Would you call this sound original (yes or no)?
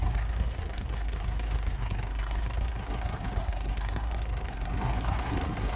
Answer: no